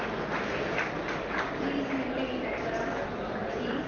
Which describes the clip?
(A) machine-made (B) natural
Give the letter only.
B